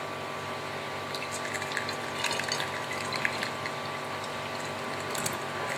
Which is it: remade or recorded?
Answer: recorded